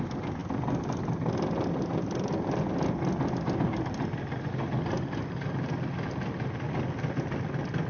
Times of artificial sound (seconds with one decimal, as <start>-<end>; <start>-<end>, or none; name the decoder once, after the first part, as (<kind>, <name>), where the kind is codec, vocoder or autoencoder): none